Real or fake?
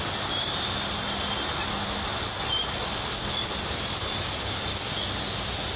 real